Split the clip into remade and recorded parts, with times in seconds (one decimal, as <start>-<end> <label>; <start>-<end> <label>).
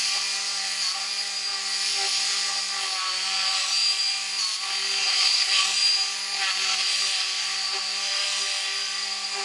0.0-5.0 recorded; 5.0-5.5 remade; 5.5-9.4 recorded